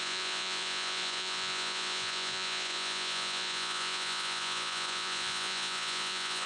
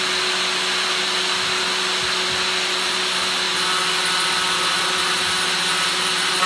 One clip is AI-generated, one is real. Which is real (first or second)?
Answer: second